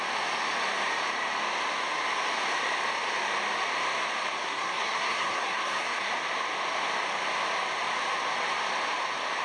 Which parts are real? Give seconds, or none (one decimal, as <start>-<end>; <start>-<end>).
0.0-4.4; 6.1-9.4